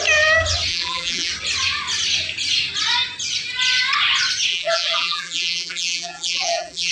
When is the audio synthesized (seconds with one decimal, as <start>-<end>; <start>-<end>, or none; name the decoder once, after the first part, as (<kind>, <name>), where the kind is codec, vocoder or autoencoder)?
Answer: 0.7-1.3 (vocoder, BigVGAN v2); 4.5-6.9